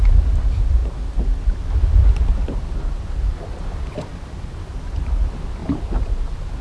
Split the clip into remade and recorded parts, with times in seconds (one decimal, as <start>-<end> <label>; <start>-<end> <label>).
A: 0.0-6.6 recorded